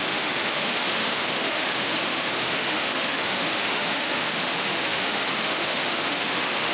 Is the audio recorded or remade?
remade